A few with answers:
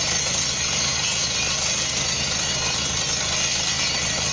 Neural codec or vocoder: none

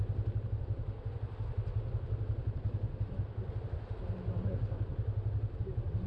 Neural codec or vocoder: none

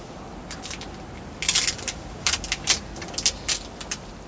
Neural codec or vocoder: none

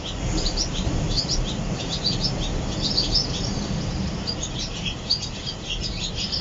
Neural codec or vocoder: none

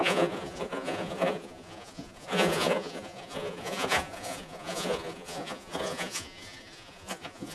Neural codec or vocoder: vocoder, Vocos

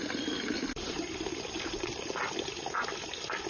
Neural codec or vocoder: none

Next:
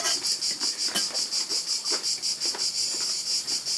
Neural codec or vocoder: none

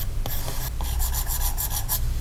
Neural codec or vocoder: none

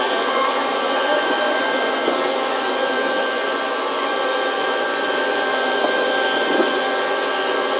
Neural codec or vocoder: vocoder, Vocos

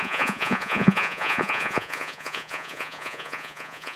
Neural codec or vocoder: vocoder, Vocos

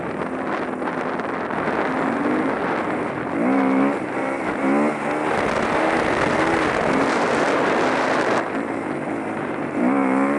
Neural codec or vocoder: none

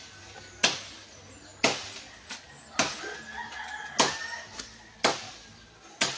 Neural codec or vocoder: none